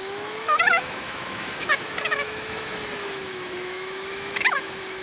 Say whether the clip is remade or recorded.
remade